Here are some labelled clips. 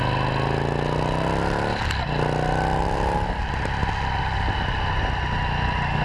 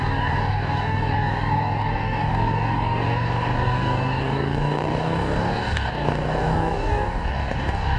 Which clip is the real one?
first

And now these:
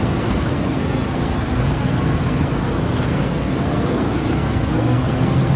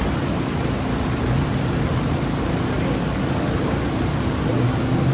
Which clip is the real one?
second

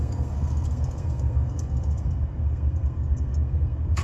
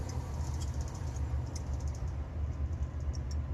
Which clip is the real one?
second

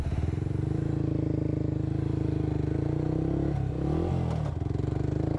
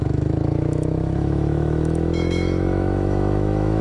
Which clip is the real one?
first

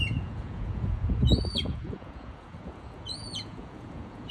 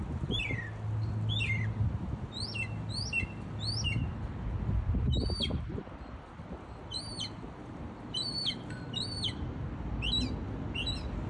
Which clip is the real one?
second